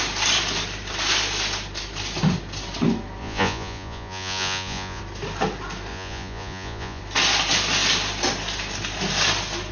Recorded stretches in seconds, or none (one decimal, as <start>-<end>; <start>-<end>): 0.0-3.2; 5.0-5.9; 7.0-9.7